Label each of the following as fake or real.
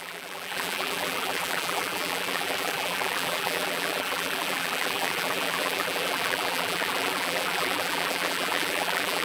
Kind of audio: fake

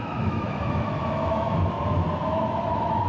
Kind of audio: fake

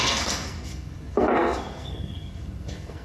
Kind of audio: fake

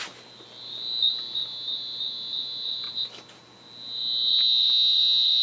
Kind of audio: real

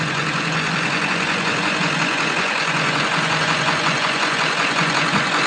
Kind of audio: fake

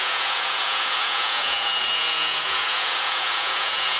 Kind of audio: fake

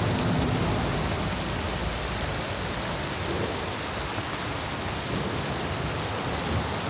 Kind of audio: real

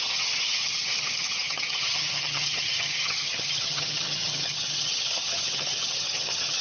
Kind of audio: fake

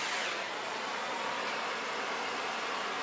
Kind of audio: real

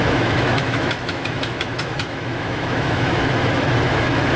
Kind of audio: fake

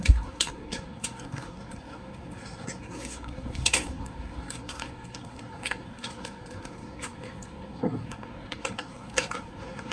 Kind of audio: fake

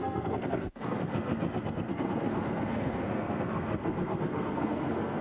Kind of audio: fake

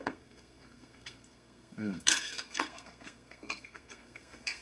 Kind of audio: fake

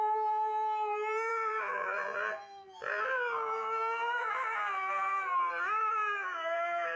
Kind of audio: fake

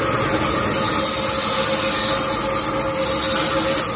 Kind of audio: real